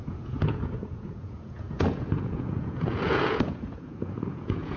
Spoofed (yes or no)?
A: yes